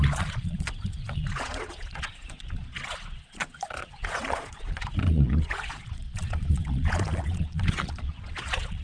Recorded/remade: remade